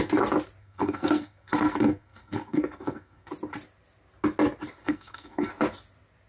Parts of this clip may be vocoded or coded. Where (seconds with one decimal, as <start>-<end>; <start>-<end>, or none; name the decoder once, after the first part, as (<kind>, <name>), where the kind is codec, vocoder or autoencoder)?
0.6-3.3 (codec, SNAC); 4.8-5.5